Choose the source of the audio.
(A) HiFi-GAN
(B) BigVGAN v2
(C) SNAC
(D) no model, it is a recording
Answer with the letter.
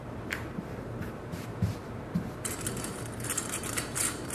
B